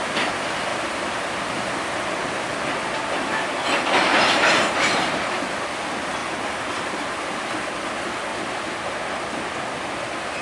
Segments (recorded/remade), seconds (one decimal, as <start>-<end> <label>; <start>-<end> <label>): 0.0-0.7 recorded; 0.7-1.7 remade; 1.7-4.1 recorded; 4.1-5.4 remade; 5.4-6.2 recorded; 6.2-7.2 remade; 7.2-8.3 recorded; 8.3-9.1 remade; 9.1-10.4 recorded